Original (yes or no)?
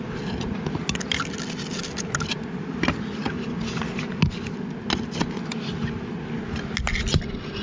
yes